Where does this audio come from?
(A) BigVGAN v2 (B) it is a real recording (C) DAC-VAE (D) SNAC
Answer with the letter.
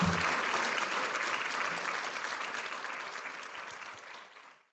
B